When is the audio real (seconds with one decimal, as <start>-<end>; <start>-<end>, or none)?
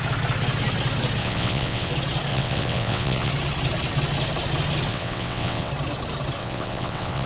0.0-1.2; 1.9-2.3; 3.3-4.9; 5.7-6.4